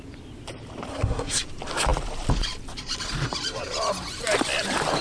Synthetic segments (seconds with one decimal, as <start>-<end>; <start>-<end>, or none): 0.9-1.4